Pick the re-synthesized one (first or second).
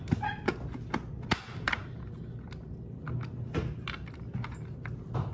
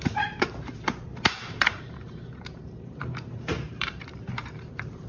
second